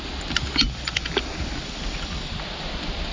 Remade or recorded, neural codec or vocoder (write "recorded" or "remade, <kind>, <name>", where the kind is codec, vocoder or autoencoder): recorded